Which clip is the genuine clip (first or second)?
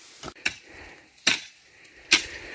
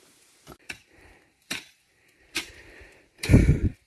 first